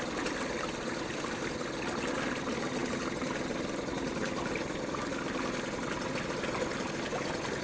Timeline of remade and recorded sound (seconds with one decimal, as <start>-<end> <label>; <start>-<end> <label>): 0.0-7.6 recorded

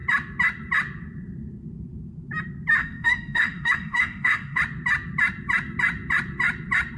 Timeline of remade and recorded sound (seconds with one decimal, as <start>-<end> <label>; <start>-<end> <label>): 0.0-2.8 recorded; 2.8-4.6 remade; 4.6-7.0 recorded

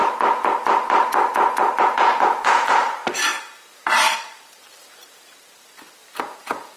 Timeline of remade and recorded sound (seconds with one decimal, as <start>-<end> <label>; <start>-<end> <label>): 0.0-1.8 recorded; 1.8-3.0 remade; 3.0-6.2 recorded; 6.2-6.8 remade

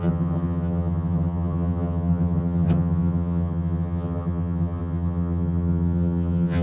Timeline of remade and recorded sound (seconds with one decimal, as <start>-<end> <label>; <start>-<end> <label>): 0.0-6.6 remade

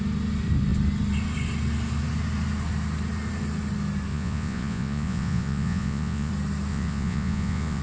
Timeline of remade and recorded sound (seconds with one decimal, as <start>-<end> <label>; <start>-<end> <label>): 0.0-4.1 recorded; 4.1-6.3 remade; 6.3-6.7 recorded; 6.7-7.8 remade

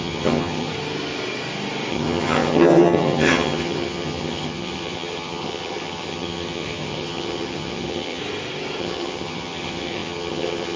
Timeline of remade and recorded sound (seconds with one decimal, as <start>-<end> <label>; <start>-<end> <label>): 0.0-0.7 remade; 0.7-1.9 recorded; 1.9-8.2 remade; 8.2-8.8 recorded; 8.8-10.8 remade